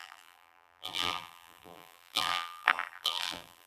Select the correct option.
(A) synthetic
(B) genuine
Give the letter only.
A